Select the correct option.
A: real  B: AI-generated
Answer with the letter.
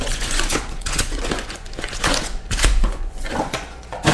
B